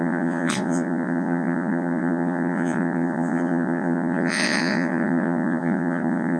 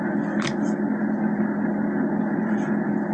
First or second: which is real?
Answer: second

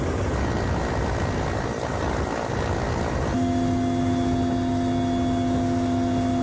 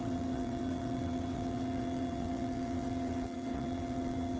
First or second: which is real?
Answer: first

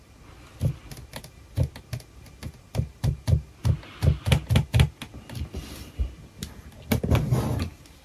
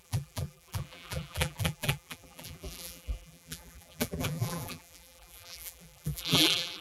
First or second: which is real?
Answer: first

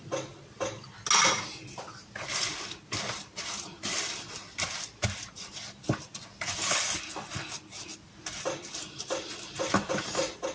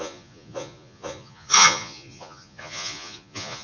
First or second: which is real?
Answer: first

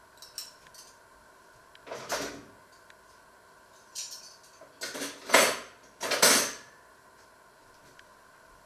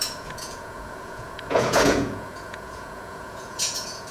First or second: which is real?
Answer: first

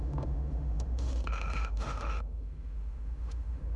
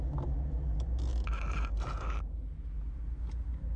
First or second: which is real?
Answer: second